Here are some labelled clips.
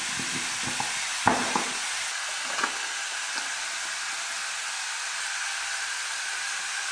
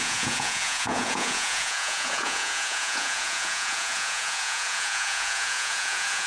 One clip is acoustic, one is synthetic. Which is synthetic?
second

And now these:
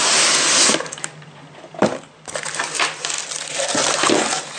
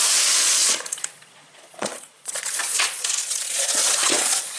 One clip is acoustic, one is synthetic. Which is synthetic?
second